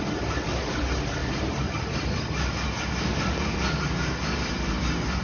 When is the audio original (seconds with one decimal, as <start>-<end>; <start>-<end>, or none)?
0.0-1.2; 3.8-5.2